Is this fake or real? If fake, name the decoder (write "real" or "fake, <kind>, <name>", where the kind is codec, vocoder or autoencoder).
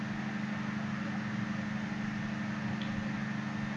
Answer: real